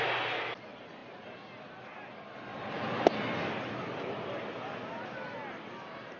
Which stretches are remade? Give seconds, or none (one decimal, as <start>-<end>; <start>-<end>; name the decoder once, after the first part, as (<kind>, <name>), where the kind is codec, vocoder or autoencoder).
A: none